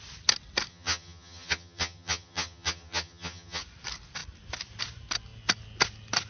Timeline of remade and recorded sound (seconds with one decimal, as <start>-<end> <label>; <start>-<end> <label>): 0.0-0.7 recorded; 0.7-3.6 remade; 3.6-6.3 recorded

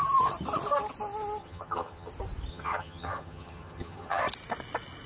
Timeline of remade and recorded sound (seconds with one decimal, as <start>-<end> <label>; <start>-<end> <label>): 0.0-1.4 recorded; 1.4-2.1 remade; 2.1-2.5 recorded; 2.5-4.2 remade; 4.2-5.1 recorded

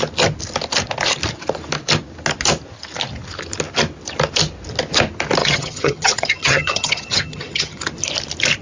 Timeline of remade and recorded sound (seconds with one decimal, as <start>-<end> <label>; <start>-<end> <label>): 0.0-5.4 recorded; 5.4-7.8 remade; 7.8-8.6 recorded

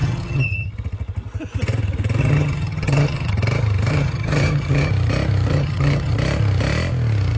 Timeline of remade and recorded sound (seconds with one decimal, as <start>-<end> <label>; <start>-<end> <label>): 0.0-0.7 remade; 0.7-2.2 recorded; 2.2-3.3 remade; 3.3-3.9 recorded; 3.9-4.9 remade; 4.9-5.5 recorded; 5.5-6.1 remade; 6.1-7.4 recorded

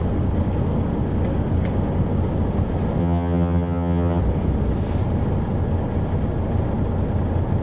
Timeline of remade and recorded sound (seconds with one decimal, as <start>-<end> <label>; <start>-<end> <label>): 0.0-3.0 recorded; 3.0-4.2 remade; 4.2-7.6 recorded

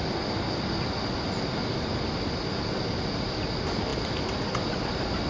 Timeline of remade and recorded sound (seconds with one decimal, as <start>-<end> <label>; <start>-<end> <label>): 0.0-5.3 recorded